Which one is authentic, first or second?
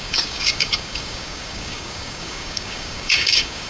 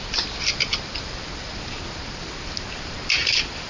second